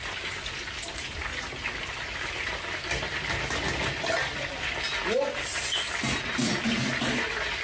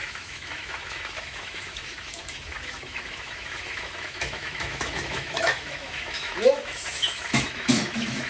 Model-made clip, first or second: second